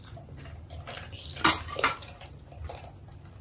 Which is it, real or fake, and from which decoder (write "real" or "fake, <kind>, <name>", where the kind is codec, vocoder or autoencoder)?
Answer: real